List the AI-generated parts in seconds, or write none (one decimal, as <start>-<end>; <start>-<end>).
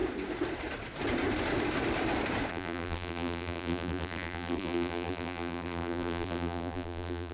2.5-7.3